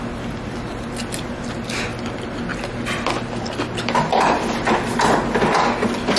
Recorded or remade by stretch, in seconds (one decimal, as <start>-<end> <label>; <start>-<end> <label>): 0.0-2.5 recorded; 2.5-4.6 remade; 4.6-6.2 recorded